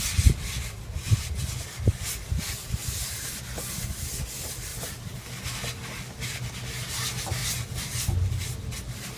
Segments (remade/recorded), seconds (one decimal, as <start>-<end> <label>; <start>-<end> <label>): 0.0-4.7 recorded; 4.7-5.3 remade; 5.3-9.2 recorded